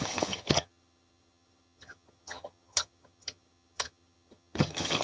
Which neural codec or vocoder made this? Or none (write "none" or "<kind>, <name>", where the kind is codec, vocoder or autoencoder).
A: vocoder, HiFi-GAN